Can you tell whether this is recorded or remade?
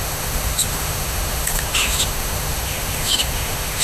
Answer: remade